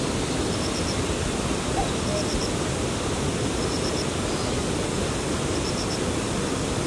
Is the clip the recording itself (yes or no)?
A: yes